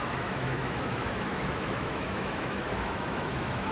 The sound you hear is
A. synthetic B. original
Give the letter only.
A